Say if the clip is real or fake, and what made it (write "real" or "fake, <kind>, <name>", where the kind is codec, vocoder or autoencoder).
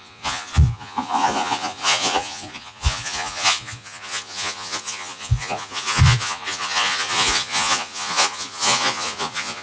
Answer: fake, vocoder, Vocos